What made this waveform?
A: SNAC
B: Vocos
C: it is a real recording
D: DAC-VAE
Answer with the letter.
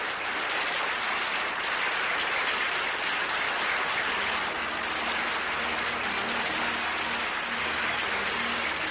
C